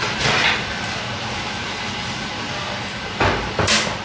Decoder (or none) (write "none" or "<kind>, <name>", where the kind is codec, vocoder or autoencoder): none